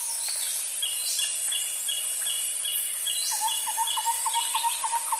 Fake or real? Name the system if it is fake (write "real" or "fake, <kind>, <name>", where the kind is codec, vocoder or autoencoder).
real